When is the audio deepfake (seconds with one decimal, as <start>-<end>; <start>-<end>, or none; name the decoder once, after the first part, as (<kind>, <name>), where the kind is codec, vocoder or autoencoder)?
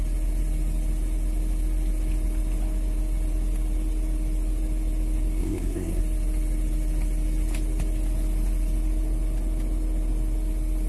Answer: 5.4-6.0 (codec, SNAC)